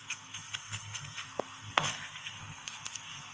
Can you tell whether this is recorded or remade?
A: remade